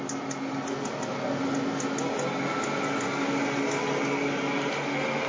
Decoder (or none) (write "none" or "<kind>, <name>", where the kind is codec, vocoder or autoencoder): none